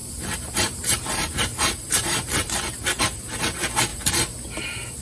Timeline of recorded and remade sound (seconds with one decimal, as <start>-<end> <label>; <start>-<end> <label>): 0.0-3.0 remade; 3.0-3.9 recorded; 3.9-4.5 remade; 4.5-5.0 recorded